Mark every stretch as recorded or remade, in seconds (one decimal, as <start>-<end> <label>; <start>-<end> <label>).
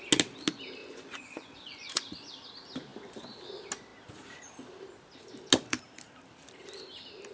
0.0-0.8 recorded; 0.8-2.5 remade; 2.5-7.3 recorded